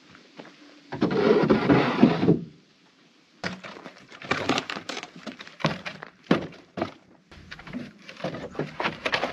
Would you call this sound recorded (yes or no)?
no